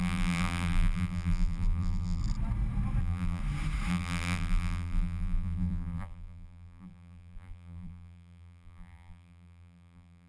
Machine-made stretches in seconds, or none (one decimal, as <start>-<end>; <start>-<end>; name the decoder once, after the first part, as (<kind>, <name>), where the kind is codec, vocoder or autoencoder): 0.0-2.2 (vocoder, BigVGAN v2); 3.0-3.4; 3.9-10.3